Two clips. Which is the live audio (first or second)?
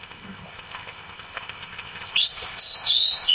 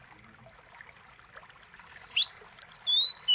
second